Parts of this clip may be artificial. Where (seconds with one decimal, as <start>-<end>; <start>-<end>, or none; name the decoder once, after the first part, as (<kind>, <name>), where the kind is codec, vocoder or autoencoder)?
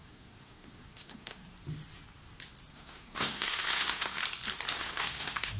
0.0-1.5 (codec, SNAC); 2.7-4.2; 4.8-5.6